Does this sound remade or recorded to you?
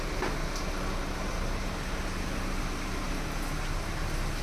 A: recorded